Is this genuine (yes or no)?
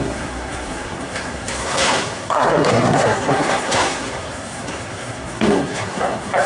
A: no